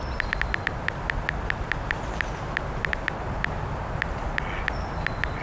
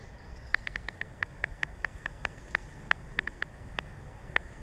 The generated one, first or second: second